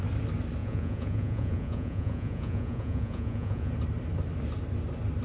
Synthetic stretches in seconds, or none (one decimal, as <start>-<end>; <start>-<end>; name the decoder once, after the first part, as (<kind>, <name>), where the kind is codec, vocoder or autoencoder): 0.6-3.7 (vocoder, Vocos)